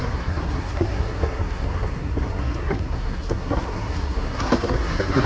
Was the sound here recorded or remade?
remade